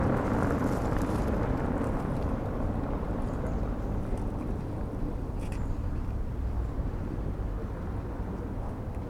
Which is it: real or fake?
fake